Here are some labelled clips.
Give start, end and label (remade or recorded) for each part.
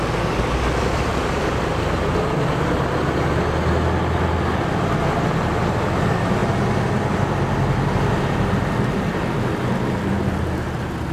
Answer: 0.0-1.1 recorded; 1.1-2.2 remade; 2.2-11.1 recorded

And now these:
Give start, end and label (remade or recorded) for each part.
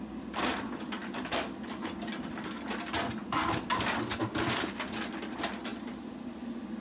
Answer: 0.0-5.7 recorded; 5.7-6.3 remade; 6.3-6.8 recorded